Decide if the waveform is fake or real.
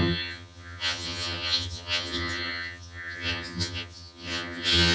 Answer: fake